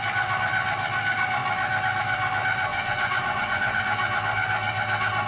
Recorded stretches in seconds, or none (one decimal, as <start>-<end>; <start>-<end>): 0.0-2.7; 3.8-5.3